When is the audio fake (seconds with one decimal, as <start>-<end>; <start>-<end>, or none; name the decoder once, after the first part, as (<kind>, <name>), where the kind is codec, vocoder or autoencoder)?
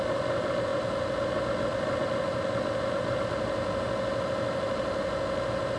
none